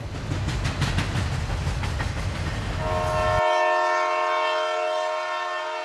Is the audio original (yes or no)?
yes